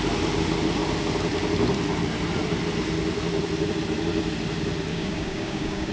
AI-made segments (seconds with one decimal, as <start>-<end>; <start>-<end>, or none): 4.9-5.9